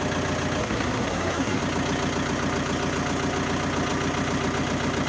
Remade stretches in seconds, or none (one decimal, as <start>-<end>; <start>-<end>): 0.6-1.6